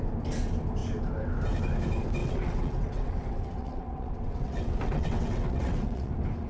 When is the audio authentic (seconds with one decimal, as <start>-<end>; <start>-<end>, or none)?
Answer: 0.0-2.2; 6.1-6.5